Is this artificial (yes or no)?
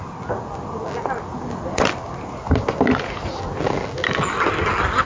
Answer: no